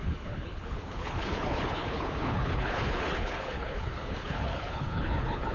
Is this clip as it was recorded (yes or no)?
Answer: no